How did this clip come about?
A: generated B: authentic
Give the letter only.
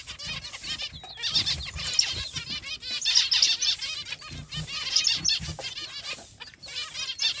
B